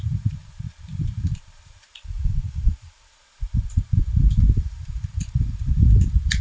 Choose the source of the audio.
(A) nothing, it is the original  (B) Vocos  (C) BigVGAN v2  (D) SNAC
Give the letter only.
C